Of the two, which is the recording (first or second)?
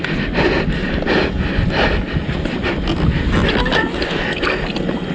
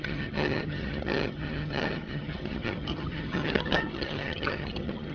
first